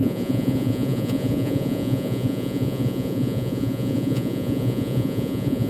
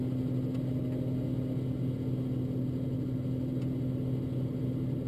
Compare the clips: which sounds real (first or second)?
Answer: second